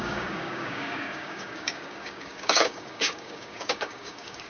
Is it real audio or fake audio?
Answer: fake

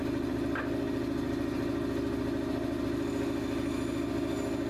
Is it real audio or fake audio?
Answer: real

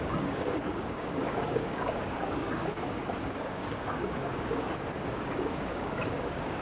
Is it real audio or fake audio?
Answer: fake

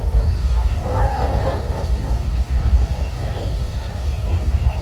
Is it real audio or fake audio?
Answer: fake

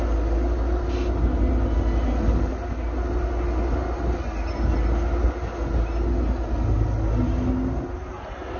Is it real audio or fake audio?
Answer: real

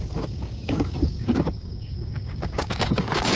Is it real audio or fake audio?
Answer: fake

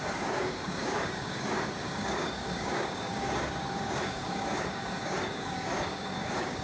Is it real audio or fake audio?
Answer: fake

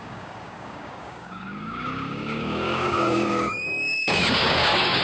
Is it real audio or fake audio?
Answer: fake